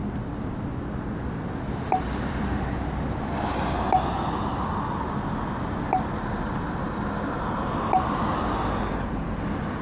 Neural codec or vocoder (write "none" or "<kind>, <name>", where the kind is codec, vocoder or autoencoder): none